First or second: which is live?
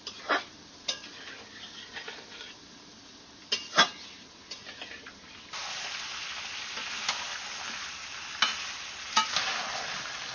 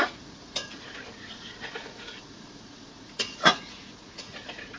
first